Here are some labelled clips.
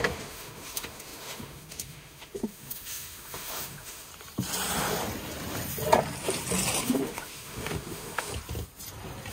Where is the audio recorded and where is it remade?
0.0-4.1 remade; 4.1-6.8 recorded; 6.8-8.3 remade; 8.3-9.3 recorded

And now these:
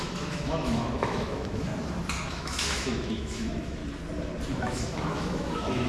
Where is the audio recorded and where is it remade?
0.0-1.7 remade; 1.7-2.3 recorded; 2.3-3.8 remade; 3.8-4.6 recorded; 4.6-5.9 remade